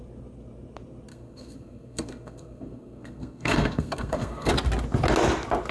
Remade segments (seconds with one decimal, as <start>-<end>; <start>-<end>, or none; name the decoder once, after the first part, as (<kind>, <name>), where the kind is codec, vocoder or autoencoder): 1.1-4.5 (codec, SNAC)